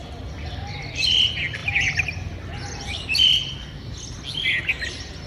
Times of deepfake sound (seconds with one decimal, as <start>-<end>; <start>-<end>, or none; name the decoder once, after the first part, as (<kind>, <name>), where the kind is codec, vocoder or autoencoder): 1.6-3.5 (vocoder, BigVGAN v2)